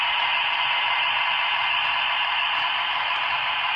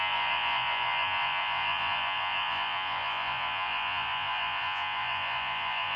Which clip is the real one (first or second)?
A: first